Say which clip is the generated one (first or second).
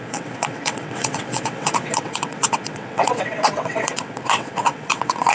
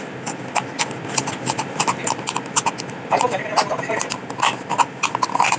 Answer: first